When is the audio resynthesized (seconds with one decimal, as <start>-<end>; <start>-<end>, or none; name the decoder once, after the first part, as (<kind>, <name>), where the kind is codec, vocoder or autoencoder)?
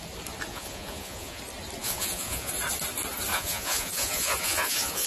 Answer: 0.5-1.4 (vocoder, Vocos); 1.8-2.5; 3.3-5.1